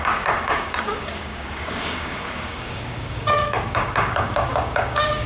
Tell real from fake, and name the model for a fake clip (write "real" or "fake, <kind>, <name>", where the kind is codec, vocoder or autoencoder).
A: fake, codec, DAC